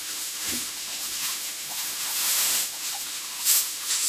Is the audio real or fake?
fake